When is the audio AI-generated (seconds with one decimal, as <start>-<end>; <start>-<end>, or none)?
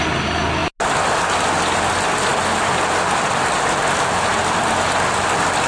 2.3-5.7